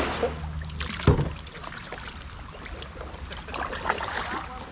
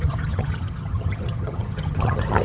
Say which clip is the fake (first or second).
second